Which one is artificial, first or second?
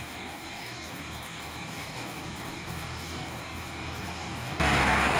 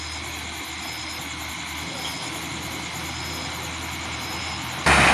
first